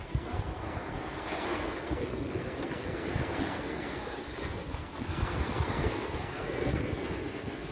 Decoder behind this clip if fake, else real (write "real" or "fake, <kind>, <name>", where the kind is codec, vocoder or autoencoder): fake, codec, SNAC